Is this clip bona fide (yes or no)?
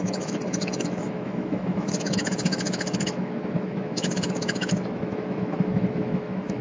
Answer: no